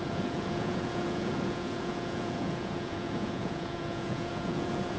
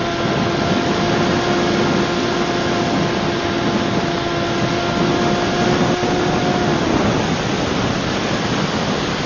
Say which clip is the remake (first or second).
first